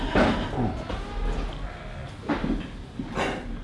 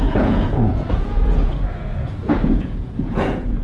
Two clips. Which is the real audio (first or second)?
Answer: first